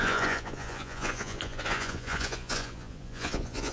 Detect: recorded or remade remade